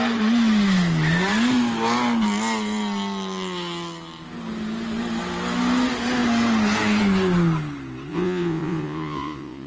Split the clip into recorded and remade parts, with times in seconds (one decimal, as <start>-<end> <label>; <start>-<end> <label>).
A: 0.0-8.1 recorded; 8.1-9.7 remade